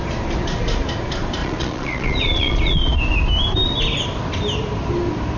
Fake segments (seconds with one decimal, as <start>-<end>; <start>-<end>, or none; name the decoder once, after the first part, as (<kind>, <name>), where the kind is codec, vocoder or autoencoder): 1.4-3.0 (vocoder, Vocos)